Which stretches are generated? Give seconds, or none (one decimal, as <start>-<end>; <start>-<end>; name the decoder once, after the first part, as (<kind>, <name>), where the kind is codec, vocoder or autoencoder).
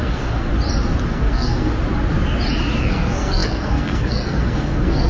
0.0-0.5 (codec, SNAC); 1.1-1.7; 2.8-5.1